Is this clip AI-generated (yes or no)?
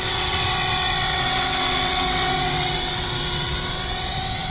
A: yes